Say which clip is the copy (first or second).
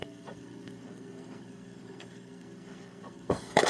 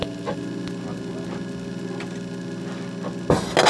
first